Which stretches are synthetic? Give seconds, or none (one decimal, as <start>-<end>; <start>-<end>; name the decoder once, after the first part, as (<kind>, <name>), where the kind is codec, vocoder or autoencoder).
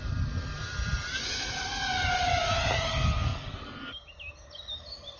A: 3.3-4.3 (vocoder, BigVGAN v2)